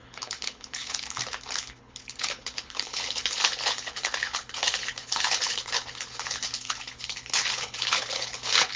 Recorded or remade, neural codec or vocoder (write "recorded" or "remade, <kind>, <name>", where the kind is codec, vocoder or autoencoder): remade, codec, HILCodec